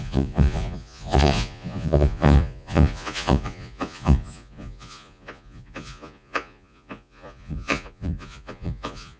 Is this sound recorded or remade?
remade